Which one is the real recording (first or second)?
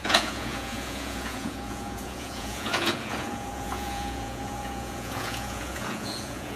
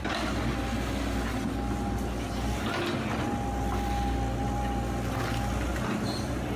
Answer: second